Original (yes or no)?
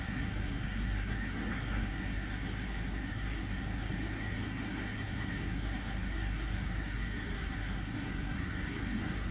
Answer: no